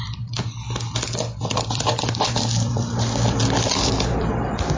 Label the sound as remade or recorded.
remade